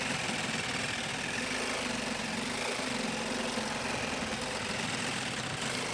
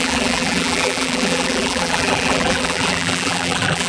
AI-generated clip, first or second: second